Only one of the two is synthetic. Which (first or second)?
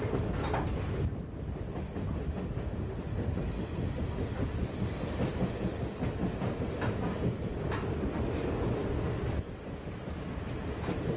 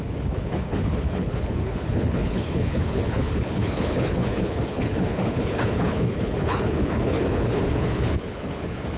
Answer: second